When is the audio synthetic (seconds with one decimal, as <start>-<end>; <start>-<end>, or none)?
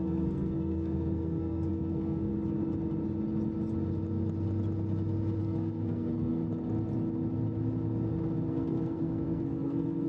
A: 0.0-2.3; 5.4-6.4; 8.5-10.1